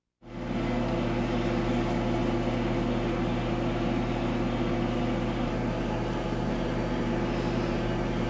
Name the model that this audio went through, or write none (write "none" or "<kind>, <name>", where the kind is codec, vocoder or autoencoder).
none